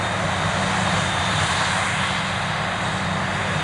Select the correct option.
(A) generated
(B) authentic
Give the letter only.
B